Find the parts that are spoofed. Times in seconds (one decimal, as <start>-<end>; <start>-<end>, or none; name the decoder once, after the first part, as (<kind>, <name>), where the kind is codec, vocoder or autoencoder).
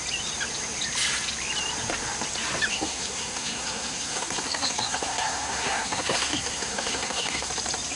2.7-7.5 (codec, SNAC)